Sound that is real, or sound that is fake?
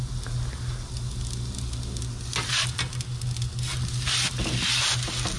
real